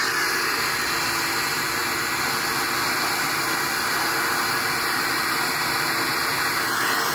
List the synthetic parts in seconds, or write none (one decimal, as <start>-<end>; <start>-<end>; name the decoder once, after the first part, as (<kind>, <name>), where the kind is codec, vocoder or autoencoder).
none